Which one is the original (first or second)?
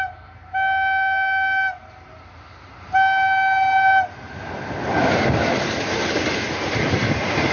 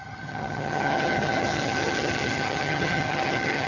first